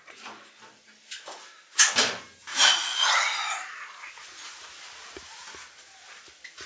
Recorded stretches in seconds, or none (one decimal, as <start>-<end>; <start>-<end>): 0.0-2.5; 3.1-6.7